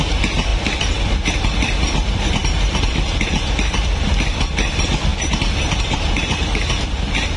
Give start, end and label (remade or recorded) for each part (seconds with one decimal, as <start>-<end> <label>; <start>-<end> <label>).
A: 0.0-5.1 remade; 5.1-5.8 recorded; 5.8-7.4 remade